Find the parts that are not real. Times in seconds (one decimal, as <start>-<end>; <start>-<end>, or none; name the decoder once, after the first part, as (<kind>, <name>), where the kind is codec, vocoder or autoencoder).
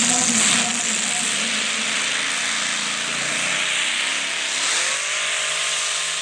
none